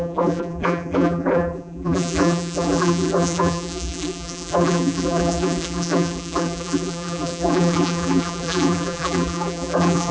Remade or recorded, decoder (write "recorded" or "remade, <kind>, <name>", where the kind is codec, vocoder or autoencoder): remade, vocoder, BigVGAN v2